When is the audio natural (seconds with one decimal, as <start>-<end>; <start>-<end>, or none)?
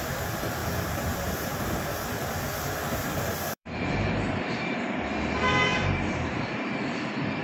0.0-0.6; 5.0-5.7; 6.5-7.4